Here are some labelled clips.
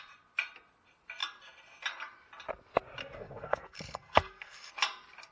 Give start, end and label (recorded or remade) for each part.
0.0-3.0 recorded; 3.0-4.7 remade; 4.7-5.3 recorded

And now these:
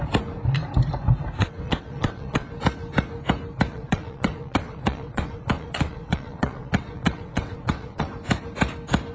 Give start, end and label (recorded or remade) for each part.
0.0-1.4 recorded; 1.4-2.5 remade; 2.5-3.7 recorded; 3.7-8.1 remade; 8.1-9.1 recorded

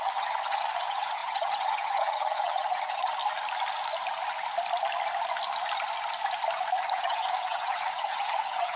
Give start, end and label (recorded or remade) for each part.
0.0-3.0 remade; 3.0-6.8 recorded; 6.8-8.8 remade